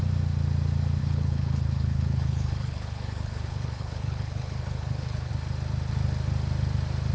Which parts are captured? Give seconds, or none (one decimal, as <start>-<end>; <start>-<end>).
0.0-1.0; 5.3-7.1